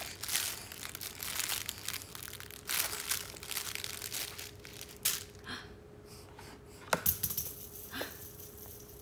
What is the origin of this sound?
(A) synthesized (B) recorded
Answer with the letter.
B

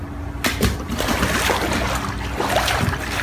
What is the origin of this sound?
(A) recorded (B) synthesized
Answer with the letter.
A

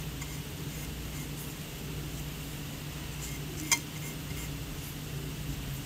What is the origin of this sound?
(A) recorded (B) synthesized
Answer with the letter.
A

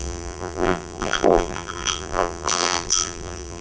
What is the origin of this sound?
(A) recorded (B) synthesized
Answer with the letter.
B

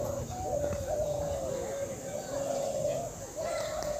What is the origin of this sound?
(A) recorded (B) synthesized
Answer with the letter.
A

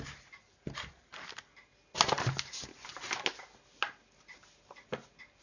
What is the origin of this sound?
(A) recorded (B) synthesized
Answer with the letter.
A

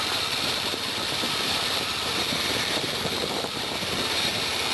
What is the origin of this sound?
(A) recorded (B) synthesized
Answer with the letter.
B